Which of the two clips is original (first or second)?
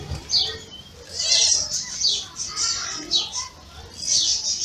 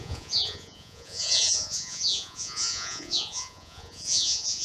first